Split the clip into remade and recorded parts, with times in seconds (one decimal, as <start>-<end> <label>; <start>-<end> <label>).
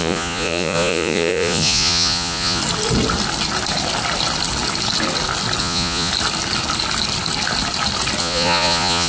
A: 0.0-2.6 remade; 2.6-5.6 recorded; 5.6-6.1 remade; 6.1-8.2 recorded; 8.2-9.1 remade